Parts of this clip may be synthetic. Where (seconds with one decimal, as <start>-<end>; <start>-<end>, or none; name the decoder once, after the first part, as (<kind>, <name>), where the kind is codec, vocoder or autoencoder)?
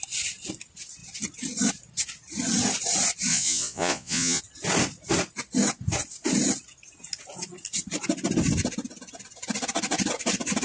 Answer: 3.3-4.4 (vocoder, Vocos)